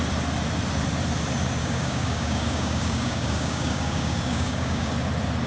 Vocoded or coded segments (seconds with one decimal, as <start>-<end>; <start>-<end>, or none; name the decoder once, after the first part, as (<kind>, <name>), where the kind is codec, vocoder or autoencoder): 1.6-4.9 (codec, DAC)